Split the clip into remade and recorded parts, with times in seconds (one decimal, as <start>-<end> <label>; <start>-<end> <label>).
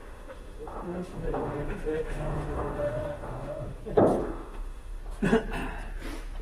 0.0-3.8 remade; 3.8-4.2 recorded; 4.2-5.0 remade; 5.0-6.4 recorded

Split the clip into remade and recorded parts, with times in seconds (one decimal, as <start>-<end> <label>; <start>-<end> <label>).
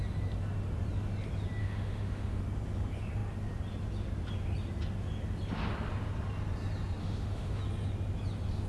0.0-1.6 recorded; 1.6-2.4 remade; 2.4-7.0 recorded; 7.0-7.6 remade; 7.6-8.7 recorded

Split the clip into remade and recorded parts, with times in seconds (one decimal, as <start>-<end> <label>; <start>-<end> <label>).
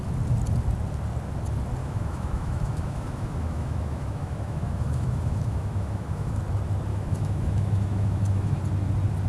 0.0-1.8 recorded; 1.8-6.4 remade; 6.4-6.9 recorded; 6.9-8.6 remade; 8.6-9.3 recorded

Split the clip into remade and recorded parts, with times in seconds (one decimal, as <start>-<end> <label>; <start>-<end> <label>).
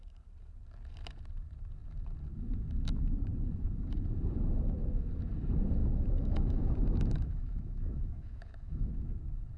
0.0-5.8 recorded; 5.8-8.9 remade; 8.9-9.6 recorded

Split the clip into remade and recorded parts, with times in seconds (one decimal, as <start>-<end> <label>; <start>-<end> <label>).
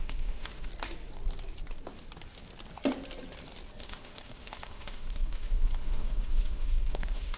0.0-0.7 remade; 0.7-3.8 recorded; 3.8-7.4 remade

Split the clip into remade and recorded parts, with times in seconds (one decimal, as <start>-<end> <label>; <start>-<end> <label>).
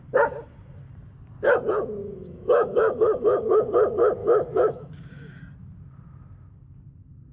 0.0-2.0 recorded; 2.0-3.6 remade; 3.6-4.2 recorded; 4.2-5.4 remade; 5.4-7.3 recorded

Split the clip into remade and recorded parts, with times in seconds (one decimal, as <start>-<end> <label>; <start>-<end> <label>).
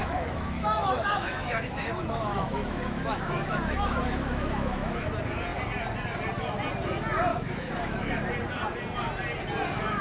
0.0-5.1 remade; 5.1-7.3 recorded; 7.3-8.1 remade; 8.1-10.0 recorded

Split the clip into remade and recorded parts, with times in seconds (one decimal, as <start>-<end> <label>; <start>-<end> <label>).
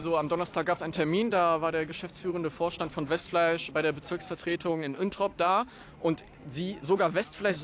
0.0-4.7 recorded; 4.7-5.7 remade; 5.7-7.6 recorded